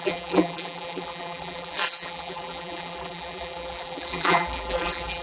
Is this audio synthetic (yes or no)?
yes